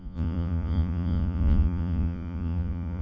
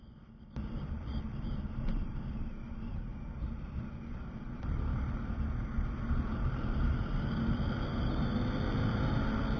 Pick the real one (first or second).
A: second